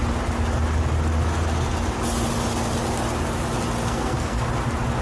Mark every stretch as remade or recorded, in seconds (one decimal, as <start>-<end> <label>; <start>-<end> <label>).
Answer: 0.0-3.8 recorded; 3.8-4.5 remade; 4.5-5.0 recorded